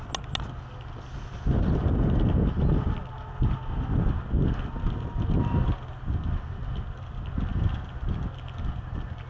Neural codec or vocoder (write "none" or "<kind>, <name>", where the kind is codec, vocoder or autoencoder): none